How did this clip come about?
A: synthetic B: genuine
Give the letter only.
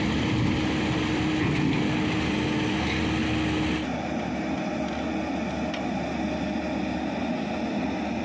B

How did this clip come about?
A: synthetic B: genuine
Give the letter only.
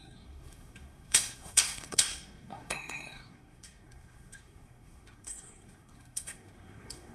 A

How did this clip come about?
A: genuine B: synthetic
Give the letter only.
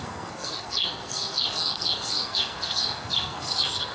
B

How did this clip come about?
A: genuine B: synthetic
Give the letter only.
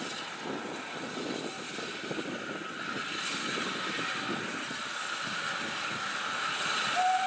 A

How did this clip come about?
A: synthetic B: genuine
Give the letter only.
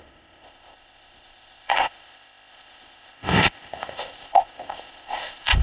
A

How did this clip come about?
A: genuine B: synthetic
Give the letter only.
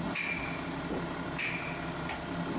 A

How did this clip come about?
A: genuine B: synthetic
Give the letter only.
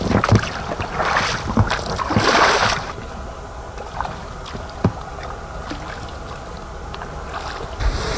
A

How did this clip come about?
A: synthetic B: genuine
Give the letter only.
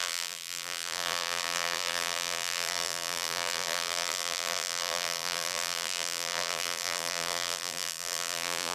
A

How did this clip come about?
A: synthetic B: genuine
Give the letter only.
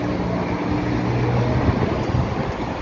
B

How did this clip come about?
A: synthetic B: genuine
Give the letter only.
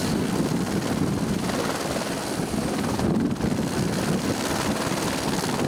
B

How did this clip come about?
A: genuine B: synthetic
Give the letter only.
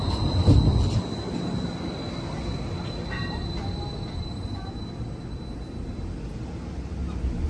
A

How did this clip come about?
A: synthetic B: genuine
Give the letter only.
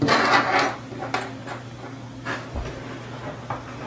B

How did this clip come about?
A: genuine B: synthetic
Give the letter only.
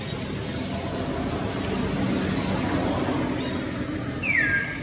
A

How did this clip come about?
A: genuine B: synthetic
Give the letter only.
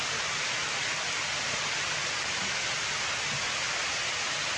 A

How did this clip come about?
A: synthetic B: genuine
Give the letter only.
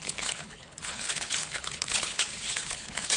A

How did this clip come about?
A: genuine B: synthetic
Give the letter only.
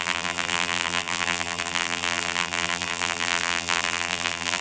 B